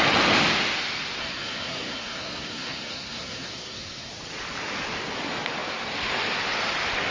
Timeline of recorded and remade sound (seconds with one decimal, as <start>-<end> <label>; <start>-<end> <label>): 0.0-1.2 recorded; 1.2-4.1 remade; 4.1-7.1 recorded